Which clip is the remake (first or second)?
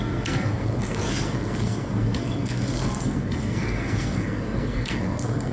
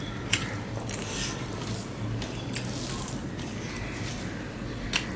first